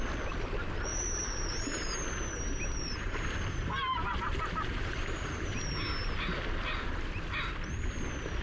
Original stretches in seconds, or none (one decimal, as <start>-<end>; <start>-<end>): 0.0-0.9; 5.7-8.4